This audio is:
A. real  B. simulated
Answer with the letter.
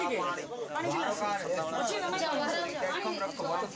A